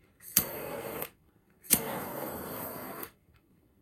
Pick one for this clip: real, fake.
fake